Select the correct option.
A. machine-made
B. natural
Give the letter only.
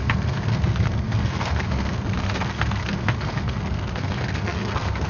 A